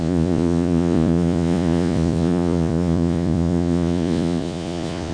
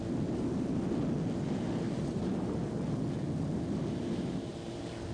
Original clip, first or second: second